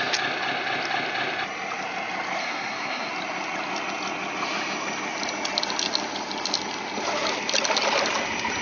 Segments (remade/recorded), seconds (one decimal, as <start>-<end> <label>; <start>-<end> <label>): 0.0-2.4 recorded; 2.4-3.1 remade; 3.1-8.6 recorded